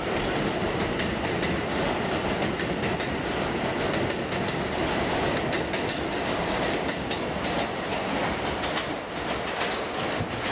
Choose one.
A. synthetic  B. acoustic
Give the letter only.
B